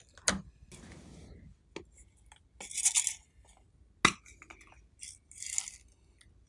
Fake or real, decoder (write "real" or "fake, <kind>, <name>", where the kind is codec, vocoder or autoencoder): real